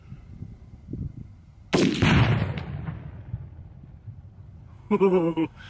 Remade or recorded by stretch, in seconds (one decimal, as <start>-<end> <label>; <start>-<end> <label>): 0.0-4.8 recorded; 4.8-5.7 remade